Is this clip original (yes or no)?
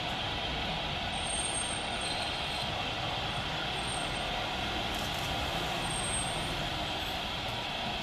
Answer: yes